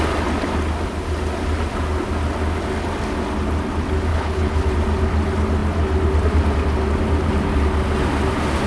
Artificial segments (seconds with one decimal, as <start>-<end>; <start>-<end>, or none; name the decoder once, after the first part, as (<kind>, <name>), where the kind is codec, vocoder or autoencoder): 4.1-4.7 (codec, HILCodec)